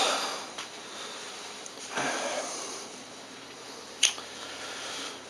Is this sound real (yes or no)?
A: no